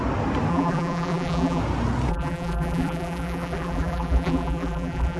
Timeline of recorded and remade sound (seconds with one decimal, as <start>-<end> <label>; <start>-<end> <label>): 0.0-0.5 recorded; 0.5-1.6 remade; 1.6-2.1 recorded; 2.1-5.2 remade